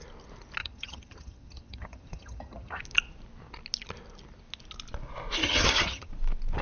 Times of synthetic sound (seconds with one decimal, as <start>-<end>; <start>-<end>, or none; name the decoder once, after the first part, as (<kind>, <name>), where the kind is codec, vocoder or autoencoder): 0.6-2.8 (vocoder, HiFi-GAN); 5.4-6.1